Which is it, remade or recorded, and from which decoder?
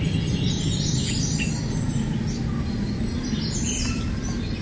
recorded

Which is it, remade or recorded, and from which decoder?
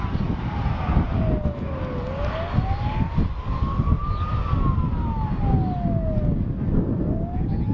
recorded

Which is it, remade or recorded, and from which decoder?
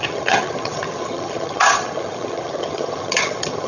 remade, vocoder, HiFi-GAN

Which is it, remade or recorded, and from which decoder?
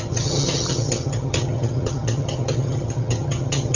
remade, vocoder, HiFi-GAN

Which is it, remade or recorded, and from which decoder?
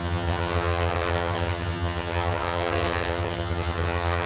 remade, vocoder, HiFi-GAN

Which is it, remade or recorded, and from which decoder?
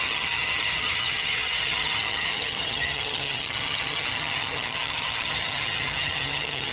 remade, vocoder, HiFi-GAN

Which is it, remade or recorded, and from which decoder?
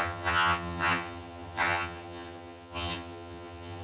remade, vocoder, HiFi-GAN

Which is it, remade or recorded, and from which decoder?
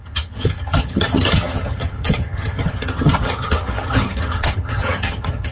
remade, vocoder, HiFi-GAN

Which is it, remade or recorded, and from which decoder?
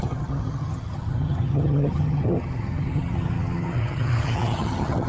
remade, vocoder, HiFi-GAN